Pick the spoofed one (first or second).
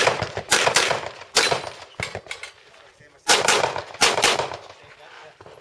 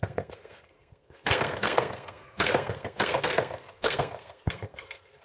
second